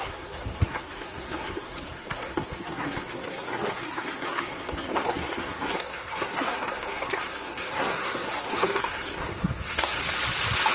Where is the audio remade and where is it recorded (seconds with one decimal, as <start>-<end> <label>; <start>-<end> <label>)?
0.0-10.0 remade; 10.0-10.7 recorded